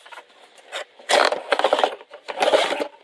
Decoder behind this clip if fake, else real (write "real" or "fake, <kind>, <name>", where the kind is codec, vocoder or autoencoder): real